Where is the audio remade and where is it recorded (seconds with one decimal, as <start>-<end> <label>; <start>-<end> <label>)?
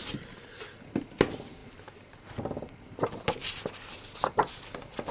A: 0.0-1.6 recorded; 1.6-5.1 remade